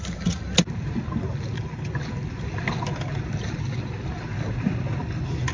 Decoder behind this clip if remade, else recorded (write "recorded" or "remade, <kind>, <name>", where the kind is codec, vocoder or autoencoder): recorded